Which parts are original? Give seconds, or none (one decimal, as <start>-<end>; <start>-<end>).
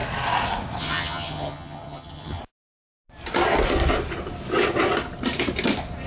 0.0-0.8; 2.4-6.1